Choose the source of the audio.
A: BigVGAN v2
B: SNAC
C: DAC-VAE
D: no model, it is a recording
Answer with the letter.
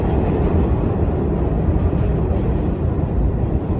A